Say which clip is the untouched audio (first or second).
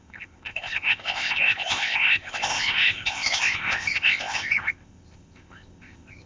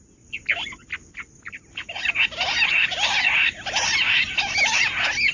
second